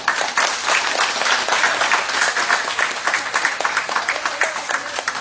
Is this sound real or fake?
real